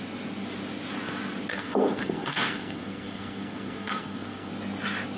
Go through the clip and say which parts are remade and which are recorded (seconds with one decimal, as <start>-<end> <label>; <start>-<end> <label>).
0.0-1.5 recorded; 1.5-4.5 remade; 4.5-5.2 recorded